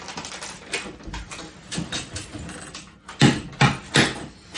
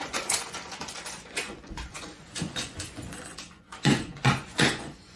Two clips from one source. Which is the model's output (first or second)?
second